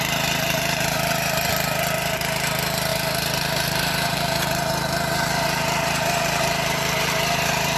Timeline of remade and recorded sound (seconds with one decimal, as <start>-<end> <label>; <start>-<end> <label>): 0.0-2.9 recorded; 2.9-7.8 remade